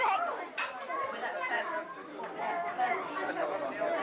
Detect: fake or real real